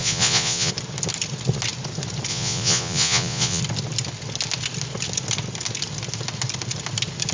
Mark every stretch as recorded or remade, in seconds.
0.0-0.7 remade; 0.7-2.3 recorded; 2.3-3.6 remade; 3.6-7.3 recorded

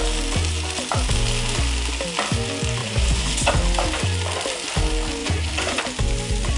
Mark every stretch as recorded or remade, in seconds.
0.0-2.8 recorded; 2.8-3.5 remade; 3.5-5.2 recorded; 5.2-5.8 remade; 5.8-6.6 recorded

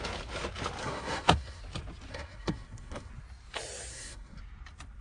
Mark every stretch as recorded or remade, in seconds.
0.0-0.8 recorded; 0.8-1.6 remade; 1.6-2.1 recorded; 2.1-3.1 remade; 3.1-3.9 recorded; 3.9-4.4 remade; 4.4-5.0 recorded

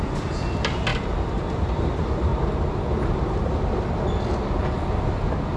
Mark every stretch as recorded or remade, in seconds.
0.0-5.6 recorded

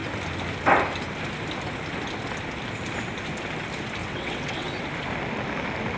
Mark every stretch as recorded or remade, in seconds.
0.0-4.0 recorded; 4.0-4.8 remade; 4.8-6.0 recorded

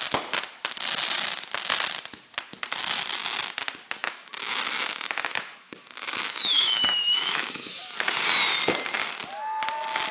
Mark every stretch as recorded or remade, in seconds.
0.0-4.0 recorded; 4.0-7.8 remade; 7.8-10.1 recorded

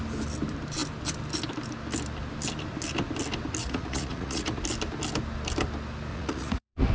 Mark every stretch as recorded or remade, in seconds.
0.0-3.6 recorded; 3.6-4.6 remade; 4.6-6.1 recorded; 6.1-6.9 remade